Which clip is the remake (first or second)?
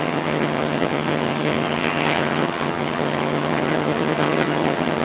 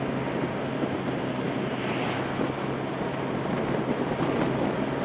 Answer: first